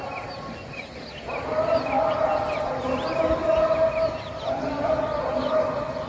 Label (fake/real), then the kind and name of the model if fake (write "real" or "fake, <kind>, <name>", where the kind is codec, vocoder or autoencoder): real